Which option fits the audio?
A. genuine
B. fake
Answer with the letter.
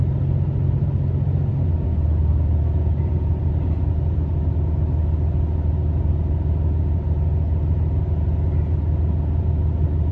A